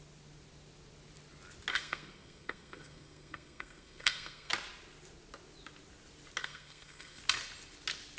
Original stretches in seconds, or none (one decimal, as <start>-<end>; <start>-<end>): 0.0-1.7; 4.5-6.4; 7.2-8.2